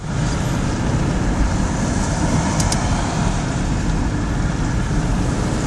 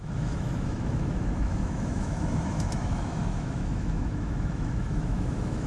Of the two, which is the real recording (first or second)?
first